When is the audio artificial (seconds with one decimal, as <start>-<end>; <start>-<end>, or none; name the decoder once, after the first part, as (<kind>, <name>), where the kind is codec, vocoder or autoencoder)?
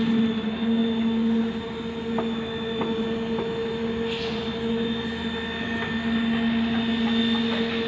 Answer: none